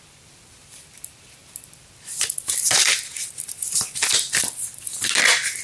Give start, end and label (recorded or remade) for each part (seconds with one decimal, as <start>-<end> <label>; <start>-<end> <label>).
0.0-5.6 recorded